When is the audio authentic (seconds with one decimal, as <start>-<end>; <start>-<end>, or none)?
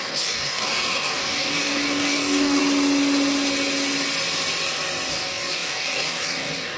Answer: 2.6-5.1